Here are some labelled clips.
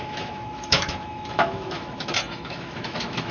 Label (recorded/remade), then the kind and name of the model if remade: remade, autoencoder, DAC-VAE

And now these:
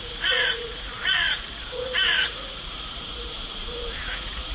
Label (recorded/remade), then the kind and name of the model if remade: remade, vocoder, Vocos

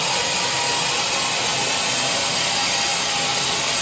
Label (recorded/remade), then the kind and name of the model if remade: recorded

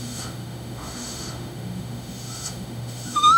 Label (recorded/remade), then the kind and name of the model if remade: remade, autoencoder, DAC-VAE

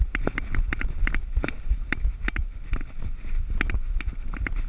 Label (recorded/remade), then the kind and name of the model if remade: recorded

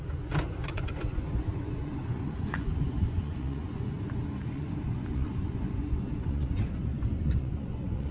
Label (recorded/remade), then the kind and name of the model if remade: remade, vocoder, Vocos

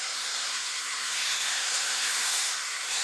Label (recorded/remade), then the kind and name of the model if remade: remade, codec, SNAC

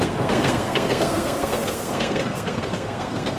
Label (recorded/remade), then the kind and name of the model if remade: remade, codec, SNAC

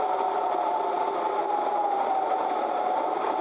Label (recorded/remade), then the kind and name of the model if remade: recorded